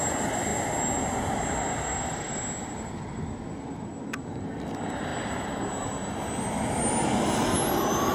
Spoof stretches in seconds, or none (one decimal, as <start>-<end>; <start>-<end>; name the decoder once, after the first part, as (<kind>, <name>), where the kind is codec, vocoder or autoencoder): none